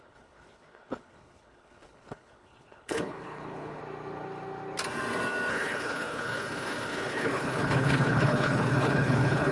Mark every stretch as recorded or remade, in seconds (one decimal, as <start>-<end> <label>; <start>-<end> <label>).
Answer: 0.0-3.8 remade; 3.8-5.5 recorded; 5.5-9.5 remade